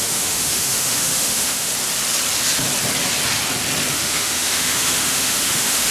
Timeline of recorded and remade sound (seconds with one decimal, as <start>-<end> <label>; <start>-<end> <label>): 0.0-1.7 remade; 1.7-3.9 recorded; 3.9-5.9 remade